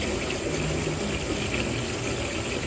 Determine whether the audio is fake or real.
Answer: real